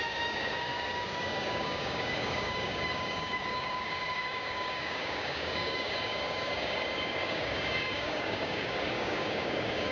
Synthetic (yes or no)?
yes